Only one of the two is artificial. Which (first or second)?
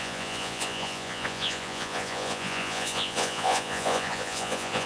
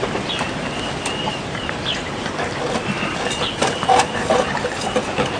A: first